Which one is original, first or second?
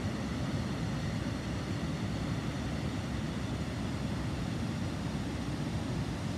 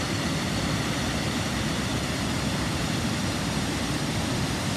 first